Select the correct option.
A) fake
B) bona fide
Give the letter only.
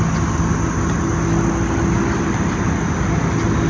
B